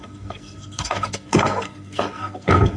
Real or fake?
fake